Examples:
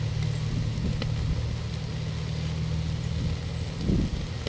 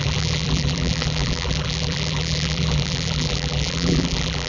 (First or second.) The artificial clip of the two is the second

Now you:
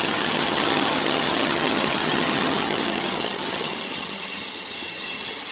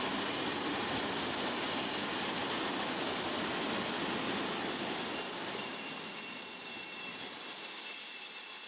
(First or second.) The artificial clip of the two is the first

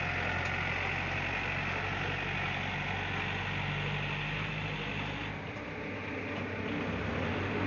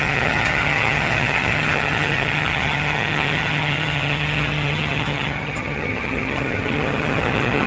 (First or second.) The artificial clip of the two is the second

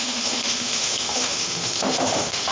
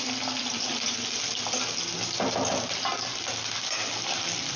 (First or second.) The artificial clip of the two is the first